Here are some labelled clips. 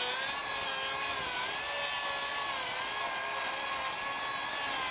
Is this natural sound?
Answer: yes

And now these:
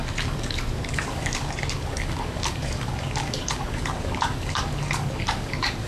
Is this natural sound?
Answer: no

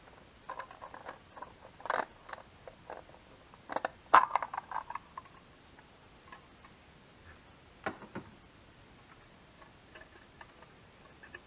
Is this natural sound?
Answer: yes